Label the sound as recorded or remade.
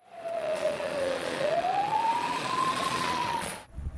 remade